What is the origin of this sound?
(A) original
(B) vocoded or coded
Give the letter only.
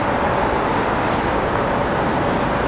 A